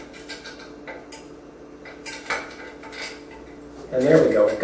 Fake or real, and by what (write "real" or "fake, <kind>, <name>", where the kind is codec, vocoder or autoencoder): real